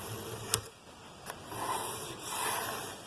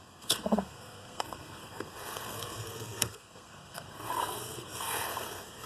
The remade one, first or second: second